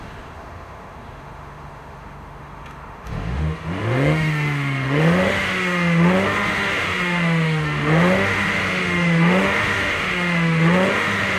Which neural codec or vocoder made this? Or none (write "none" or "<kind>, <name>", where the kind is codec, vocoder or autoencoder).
autoencoder, DAC-VAE